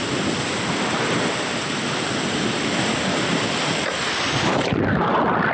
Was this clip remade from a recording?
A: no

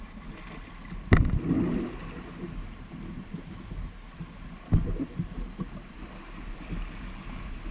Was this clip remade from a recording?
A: no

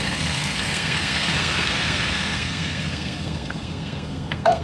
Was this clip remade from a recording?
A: yes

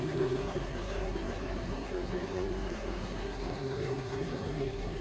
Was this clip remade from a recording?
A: yes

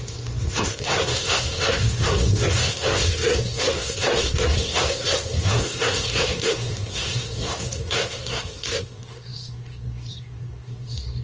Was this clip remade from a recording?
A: yes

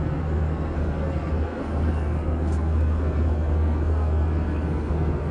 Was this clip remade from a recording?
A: yes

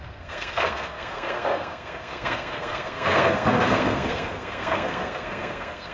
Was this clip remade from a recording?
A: yes